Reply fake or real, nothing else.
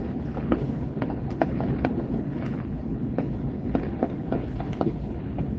fake